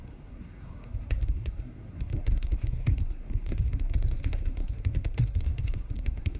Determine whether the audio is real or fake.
fake